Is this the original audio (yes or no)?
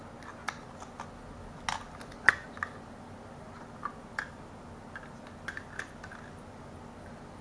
yes